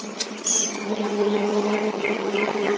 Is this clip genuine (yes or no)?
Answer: no